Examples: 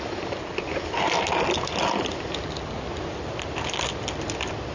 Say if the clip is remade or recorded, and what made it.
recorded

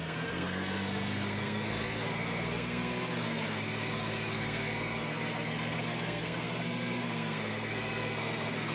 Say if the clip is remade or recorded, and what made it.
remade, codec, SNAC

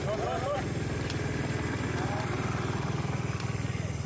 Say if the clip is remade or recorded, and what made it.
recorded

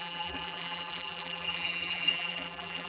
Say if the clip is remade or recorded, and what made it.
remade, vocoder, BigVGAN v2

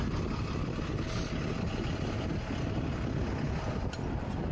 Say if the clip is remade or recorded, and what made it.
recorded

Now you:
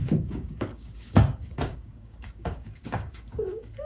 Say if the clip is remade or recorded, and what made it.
remade, codec, DAC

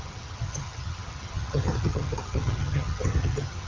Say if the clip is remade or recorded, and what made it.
remade, vocoder, HiFi-GAN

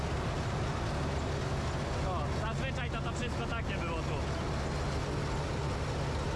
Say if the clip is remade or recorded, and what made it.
recorded